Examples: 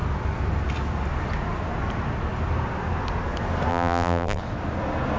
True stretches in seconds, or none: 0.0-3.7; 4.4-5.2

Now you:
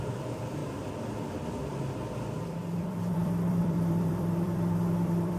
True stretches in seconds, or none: 0.6-1.9

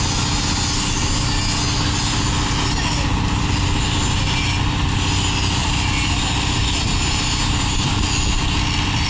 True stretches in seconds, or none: 0.0-5.6; 8.0-9.1

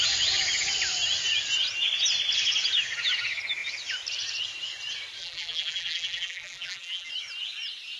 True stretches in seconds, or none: 0.0-5.2; 7.1-8.0

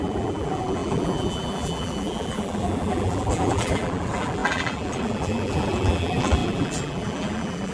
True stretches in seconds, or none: none

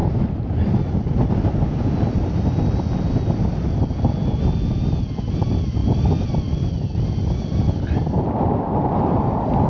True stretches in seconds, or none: 0.0-5.2

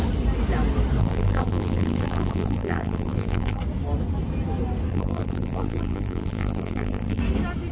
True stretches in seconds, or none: 0.0-1.0; 3.6-4.9; 7.2-7.7